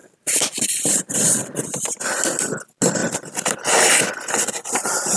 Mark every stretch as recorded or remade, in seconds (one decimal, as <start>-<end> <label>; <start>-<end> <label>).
0.0-0.8 remade; 0.8-1.4 recorded; 1.4-2.0 remade; 2.0-5.2 recorded